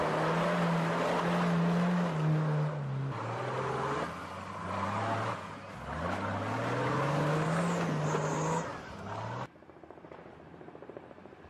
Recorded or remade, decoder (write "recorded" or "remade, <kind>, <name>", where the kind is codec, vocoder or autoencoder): recorded